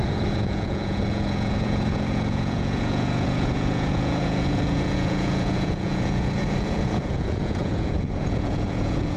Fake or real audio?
fake